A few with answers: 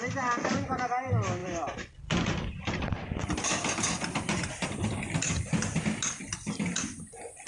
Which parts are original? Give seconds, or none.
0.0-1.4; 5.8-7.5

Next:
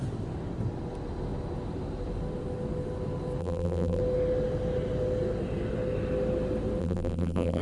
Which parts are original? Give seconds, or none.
0.0-3.4; 4.0-6.8

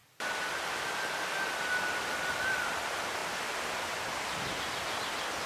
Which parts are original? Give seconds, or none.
0.0-5.5

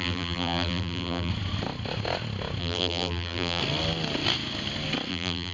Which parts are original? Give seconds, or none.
1.3-2.6; 3.6-5.1

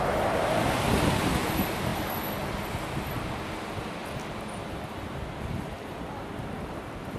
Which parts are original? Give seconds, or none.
4.0-4.6

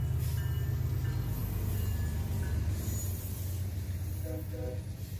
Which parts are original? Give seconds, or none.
0.0-5.2

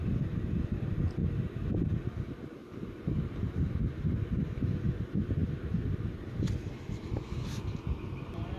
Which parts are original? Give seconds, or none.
0.0-1.2; 1.8-2.6; 3.8-8.6

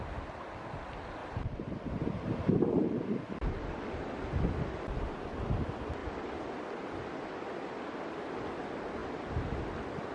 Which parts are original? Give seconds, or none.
0.0-1.2; 3.3-10.1